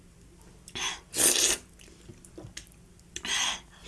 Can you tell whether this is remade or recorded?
recorded